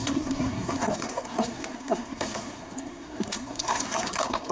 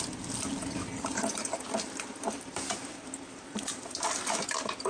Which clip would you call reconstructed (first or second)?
first